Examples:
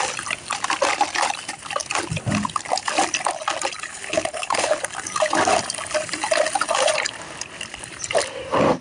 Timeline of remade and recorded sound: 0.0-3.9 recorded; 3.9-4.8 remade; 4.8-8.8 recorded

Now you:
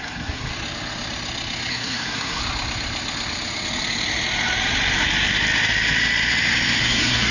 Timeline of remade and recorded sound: 0.0-0.5 remade; 0.5-1.7 recorded; 1.7-2.4 remade; 2.4-6.8 recorded; 6.8-7.3 remade

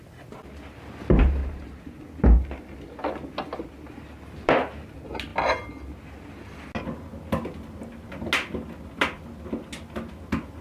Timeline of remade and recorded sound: 0.0-1.4 recorded; 1.4-2.0 remade; 2.0-10.6 recorded

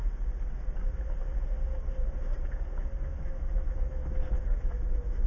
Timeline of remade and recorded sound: 0.0-3.2 recorded; 3.2-5.3 remade

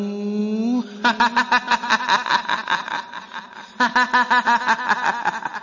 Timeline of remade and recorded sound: 0.0-5.6 recorded

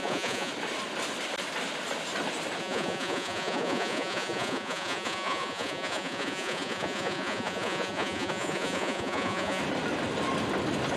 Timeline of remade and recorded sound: 0.0-0.5 remade; 0.5-2.6 recorded; 2.6-9.6 remade; 9.6-11.0 recorded

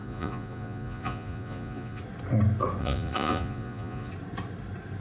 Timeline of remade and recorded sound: 0.0-2.0 remade; 2.0-2.8 recorded; 2.8-4.1 remade; 4.1-5.0 recorded

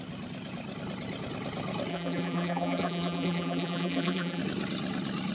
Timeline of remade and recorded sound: 0.0-1.9 recorded; 1.9-4.4 remade; 4.4-5.3 recorded